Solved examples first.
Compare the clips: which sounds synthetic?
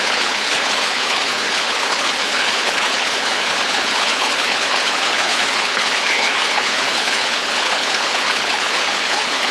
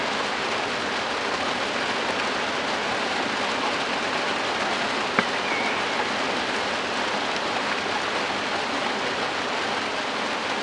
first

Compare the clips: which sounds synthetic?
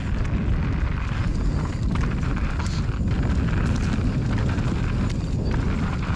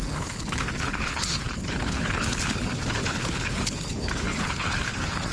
second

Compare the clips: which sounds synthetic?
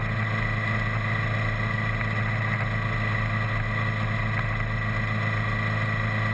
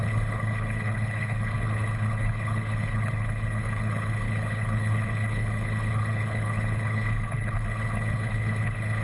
second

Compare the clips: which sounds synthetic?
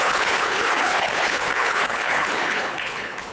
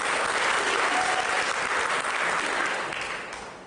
first